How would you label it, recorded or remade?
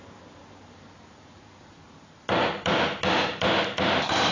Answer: remade